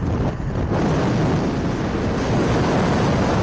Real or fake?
real